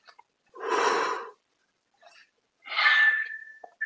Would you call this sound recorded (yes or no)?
yes